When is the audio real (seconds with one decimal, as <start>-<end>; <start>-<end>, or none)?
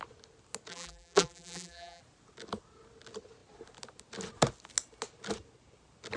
0.0-0.7; 2.0-6.2